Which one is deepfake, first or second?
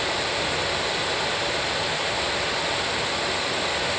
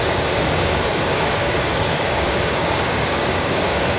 second